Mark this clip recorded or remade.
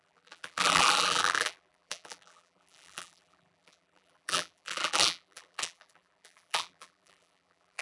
remade